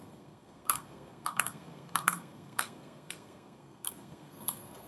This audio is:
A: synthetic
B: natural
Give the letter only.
A